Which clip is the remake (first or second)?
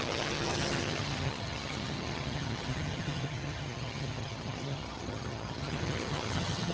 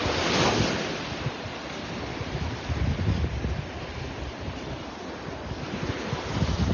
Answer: first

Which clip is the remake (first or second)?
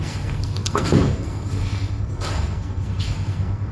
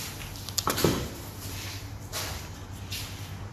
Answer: first